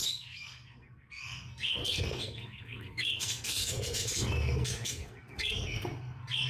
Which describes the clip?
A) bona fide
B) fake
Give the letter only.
B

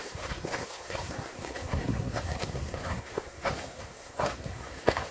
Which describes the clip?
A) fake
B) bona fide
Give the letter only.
A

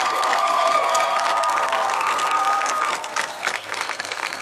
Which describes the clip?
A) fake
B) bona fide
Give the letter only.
A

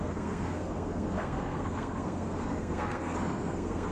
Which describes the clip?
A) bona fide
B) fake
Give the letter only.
B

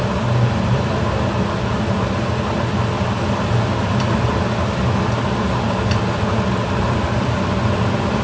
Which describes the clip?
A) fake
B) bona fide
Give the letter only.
B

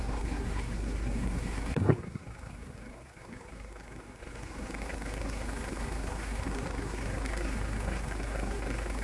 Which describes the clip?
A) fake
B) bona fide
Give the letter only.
A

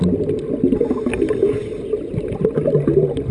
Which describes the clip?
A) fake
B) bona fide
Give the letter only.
B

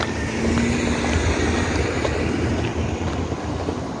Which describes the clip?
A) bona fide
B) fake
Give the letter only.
A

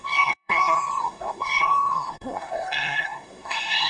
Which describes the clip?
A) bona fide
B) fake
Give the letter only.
B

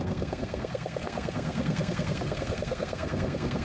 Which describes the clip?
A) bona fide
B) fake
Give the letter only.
B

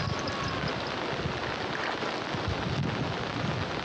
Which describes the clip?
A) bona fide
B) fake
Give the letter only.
A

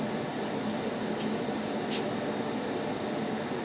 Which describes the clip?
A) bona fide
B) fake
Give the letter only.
A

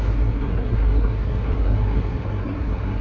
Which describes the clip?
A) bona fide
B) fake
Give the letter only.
B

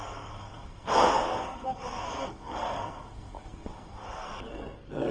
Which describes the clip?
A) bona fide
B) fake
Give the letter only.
B